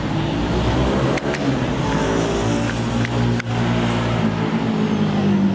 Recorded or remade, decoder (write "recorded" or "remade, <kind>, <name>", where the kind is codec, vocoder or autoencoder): recorded